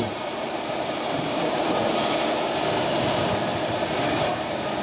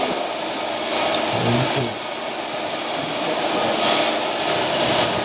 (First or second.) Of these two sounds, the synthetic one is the first